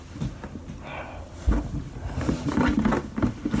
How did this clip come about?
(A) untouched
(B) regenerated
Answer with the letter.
A